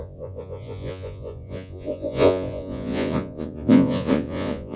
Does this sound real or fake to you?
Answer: fake